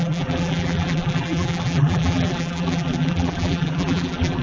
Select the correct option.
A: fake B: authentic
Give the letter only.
A